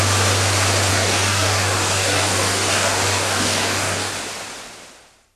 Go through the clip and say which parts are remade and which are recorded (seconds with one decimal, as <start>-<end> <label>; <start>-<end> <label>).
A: 0.0-0.9 recorded; 0.9-4.1 remade; 4.1-5.4 recorded